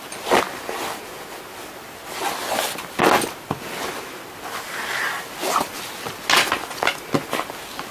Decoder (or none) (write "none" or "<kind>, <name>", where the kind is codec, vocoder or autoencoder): none